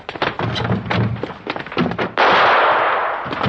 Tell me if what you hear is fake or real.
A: real